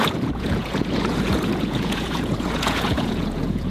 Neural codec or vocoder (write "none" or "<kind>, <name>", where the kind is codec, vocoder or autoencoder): vocoder, Vocos